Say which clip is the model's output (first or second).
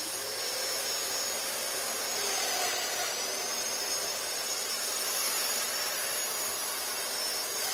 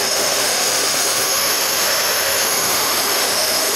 second